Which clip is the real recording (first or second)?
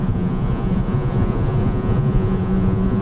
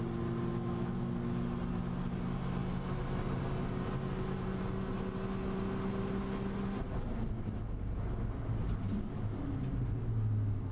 second